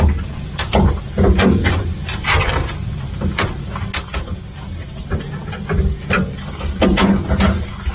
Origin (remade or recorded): recorded